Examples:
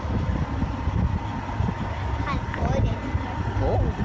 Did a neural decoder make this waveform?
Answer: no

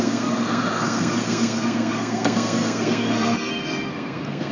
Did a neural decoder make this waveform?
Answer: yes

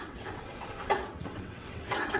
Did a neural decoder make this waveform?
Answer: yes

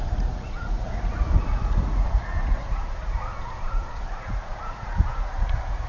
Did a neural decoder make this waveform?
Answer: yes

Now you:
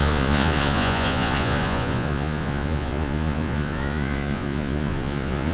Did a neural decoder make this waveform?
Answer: yes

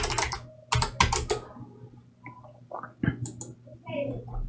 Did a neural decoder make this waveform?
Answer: no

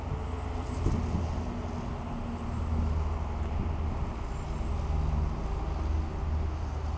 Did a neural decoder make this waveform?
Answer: no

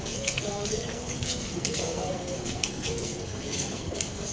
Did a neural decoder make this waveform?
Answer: yes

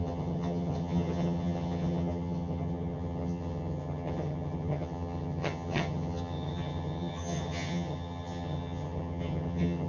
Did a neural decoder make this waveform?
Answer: yes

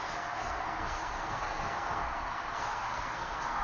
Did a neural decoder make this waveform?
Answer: yes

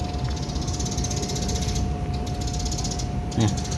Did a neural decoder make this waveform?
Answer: no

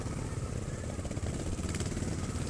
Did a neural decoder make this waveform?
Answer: yes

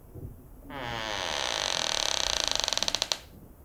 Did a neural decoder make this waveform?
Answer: no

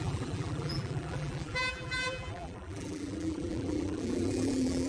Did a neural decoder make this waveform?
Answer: yes